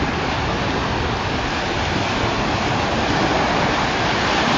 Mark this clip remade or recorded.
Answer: recorded